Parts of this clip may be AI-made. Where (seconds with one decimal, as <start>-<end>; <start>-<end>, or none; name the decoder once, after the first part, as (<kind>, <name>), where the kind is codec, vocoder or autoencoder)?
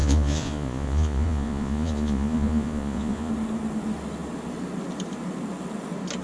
0.0-3.3 (vocoder, Vocos)